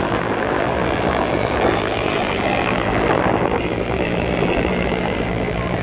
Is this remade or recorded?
remade